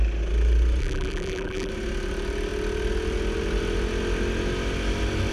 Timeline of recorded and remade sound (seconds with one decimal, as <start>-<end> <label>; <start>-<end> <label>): 0.0-0.8 recorded; 0.8-1.7 remade; 1.7-5.3 recorded